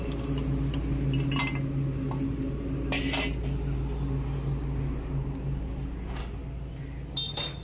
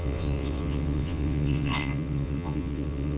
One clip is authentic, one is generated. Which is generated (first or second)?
second